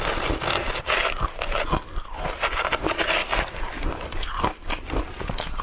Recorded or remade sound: recorded